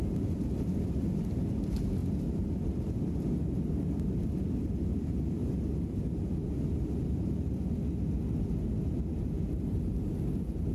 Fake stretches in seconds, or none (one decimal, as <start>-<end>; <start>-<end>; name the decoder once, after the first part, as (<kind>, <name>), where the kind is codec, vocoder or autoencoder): 2.0-3.3 (vocoder, BigVGAN v2)